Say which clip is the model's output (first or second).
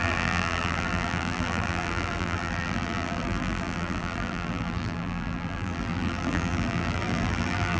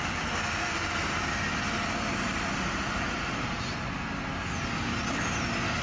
first